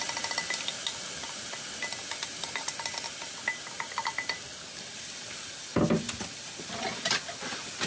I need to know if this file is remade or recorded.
recorded